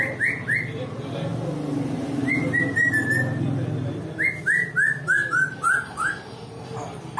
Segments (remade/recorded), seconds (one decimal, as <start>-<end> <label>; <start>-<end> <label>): 0.0-7.2 recorded